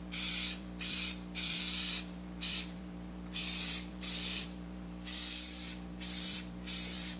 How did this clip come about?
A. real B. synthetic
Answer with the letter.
B